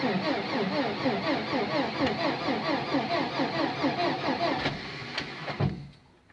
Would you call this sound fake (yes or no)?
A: no